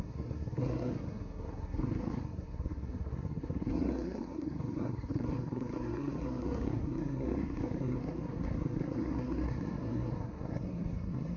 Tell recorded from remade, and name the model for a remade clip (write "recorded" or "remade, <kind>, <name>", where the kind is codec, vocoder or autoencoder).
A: remade, codec, SNAC